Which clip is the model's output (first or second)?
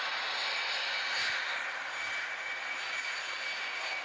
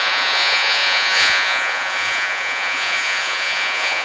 second